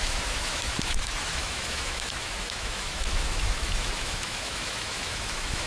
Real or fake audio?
fake